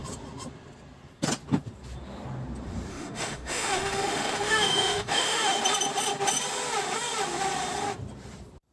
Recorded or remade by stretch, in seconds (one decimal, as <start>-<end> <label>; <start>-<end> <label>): 0.0-2.9 recorded; 2.9-5.6 remade; 5.6-8.7 recorded